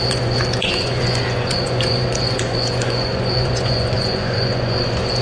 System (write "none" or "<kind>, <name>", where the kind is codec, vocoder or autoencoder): vocoder, Vocos